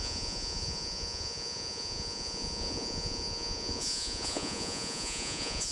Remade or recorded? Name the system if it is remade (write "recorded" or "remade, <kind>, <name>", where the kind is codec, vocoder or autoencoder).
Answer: remade, vocoder, Vocos